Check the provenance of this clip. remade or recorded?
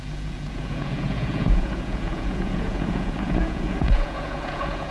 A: remade